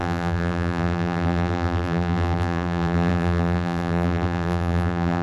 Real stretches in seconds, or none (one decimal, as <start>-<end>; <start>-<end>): none